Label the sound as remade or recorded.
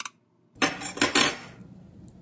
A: recorded